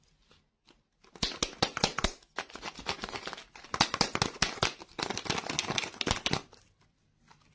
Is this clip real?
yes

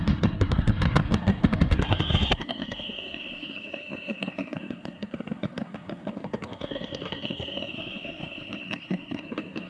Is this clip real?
no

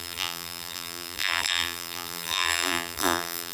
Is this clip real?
no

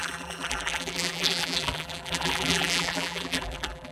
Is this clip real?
no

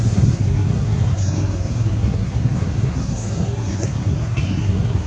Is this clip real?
no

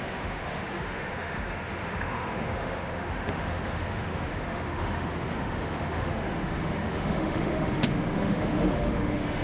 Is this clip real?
no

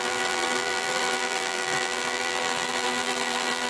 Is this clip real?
no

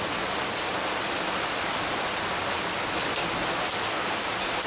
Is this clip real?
yes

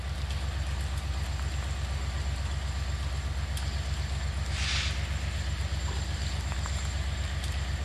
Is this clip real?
yes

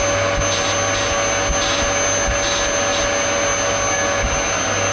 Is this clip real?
yes